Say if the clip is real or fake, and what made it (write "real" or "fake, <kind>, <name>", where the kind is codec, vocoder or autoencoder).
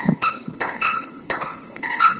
fake, codec, HILCodec